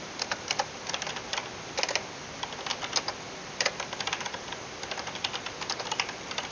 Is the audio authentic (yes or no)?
yes